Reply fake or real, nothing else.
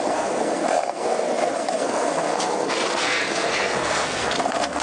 fake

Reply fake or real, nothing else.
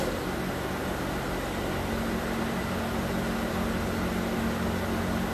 real